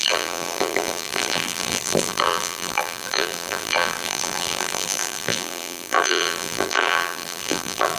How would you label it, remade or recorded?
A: remade